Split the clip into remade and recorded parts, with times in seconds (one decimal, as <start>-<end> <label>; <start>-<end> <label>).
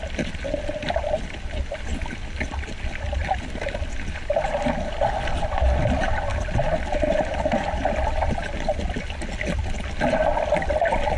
0.0-3.2 recorded; 3.2-3.9 remade; 3.9-11.2 recorded